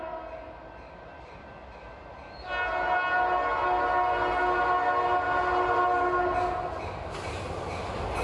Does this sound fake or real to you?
real